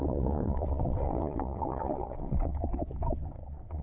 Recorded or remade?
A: remade